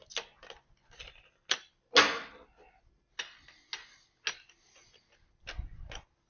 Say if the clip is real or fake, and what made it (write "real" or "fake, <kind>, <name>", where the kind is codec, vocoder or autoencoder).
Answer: real